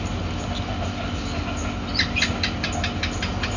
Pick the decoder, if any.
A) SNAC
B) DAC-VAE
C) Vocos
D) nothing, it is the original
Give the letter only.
D